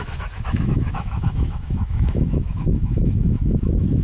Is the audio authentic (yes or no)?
no